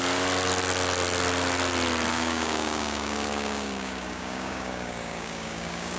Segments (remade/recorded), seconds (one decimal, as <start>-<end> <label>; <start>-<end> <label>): 0.0-2.1 recorded; 2.1-6.0 remade